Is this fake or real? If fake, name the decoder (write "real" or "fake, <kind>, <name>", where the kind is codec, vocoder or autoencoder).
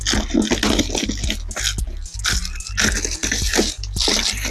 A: real